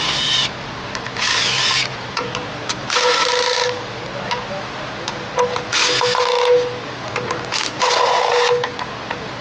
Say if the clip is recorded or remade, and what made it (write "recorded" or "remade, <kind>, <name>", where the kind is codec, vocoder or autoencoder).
recorded